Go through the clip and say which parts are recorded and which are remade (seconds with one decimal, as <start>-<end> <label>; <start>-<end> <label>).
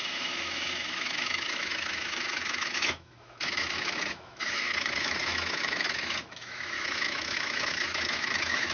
0.0-8.7 remade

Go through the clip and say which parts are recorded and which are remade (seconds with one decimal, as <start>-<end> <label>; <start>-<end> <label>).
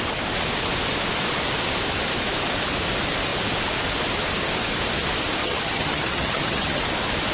0.0-5.4 recorded; 5.4-6.8 remade; 6.8-7.3 recorded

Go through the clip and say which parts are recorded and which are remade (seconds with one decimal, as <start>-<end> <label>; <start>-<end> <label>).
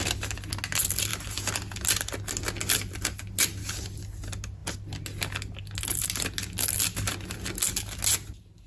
0.0-8.7 recorded